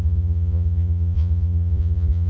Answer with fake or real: fake